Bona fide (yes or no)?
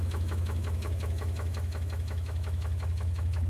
no